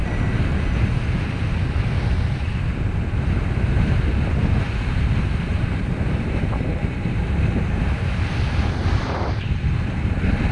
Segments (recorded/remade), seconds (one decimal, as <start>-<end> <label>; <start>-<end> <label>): 0.0-5.5 recorded; 5.5-9.6 remade; 9.6-10.5 recorded